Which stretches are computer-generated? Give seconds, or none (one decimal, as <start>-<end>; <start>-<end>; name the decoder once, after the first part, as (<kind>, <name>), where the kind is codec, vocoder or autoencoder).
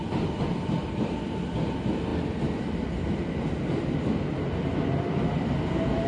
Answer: none